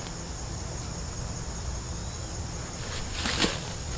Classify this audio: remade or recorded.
recorded